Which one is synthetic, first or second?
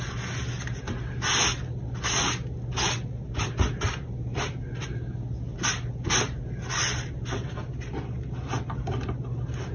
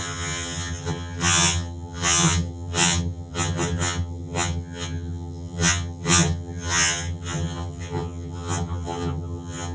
second